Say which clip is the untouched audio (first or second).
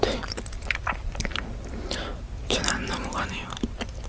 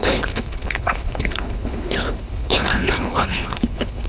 first